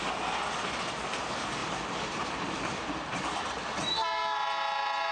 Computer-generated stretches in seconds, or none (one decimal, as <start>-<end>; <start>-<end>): 1.6-3.5